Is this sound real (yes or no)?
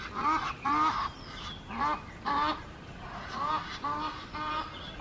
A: yes